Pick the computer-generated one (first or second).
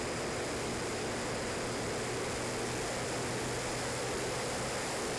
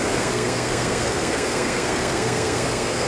second